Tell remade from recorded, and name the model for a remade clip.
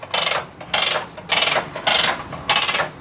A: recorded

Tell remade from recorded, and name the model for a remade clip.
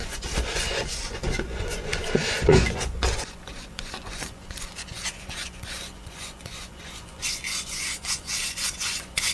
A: remade, vocoder, Vocos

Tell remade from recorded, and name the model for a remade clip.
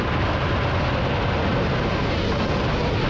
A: recorded